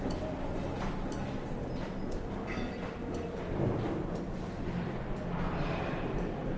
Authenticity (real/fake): real